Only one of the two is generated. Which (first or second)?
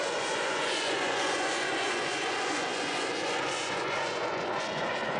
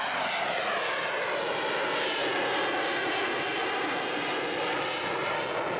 first